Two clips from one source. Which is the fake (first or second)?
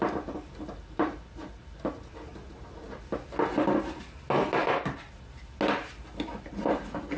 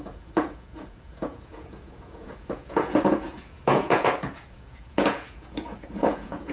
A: second